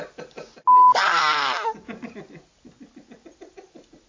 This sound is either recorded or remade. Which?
recorded